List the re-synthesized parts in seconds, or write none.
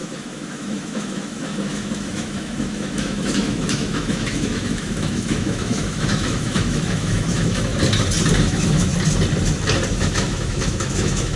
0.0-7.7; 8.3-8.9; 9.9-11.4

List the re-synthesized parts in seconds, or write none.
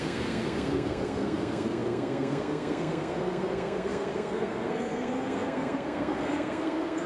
0.0-7.1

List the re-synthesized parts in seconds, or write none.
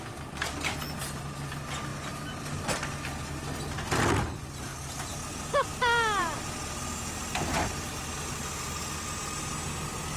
none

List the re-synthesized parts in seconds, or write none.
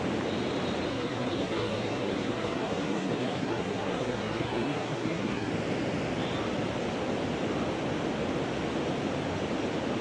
0.9-5.5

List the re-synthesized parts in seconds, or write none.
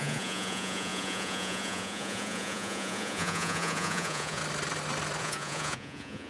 0.0-4.4; 5.2-6.3